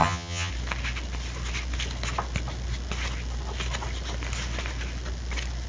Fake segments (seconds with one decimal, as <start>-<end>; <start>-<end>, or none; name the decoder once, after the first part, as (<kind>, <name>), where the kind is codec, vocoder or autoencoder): 0.0-0.5 (vocoder, HiFi-GAN)